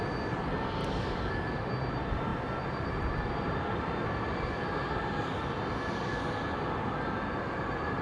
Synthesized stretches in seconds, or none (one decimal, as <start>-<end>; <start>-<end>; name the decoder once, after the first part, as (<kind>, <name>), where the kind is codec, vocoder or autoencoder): 0.8-1.7 (codec, DAC)